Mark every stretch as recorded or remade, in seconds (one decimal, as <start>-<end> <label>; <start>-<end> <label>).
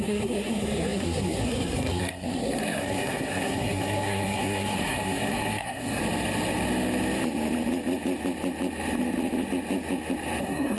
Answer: 0.0-6.0 remade; 6.0-10.4 recorded; 10.4-10.8 remade